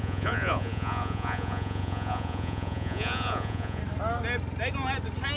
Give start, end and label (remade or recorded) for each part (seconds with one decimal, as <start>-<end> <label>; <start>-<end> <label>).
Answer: 0.0-3.8 remade; 3.8-5.4 recorded